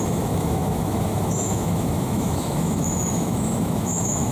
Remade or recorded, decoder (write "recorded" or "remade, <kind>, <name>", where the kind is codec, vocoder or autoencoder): remade, autoencoder, DAC-VAE